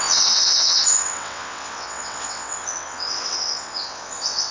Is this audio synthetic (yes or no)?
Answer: yes